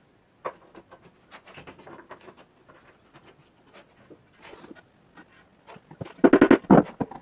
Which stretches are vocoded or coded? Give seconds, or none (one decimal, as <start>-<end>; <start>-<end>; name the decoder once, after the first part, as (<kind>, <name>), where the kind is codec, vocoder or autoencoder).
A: none